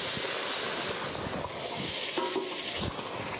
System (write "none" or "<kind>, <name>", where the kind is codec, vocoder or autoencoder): none